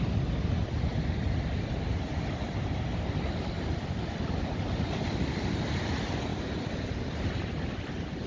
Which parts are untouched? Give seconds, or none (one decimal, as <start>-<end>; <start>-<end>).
0.0-0.9; 2.1-8.3